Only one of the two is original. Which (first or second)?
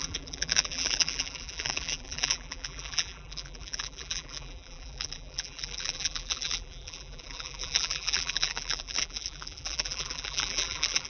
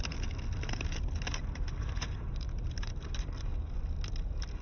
second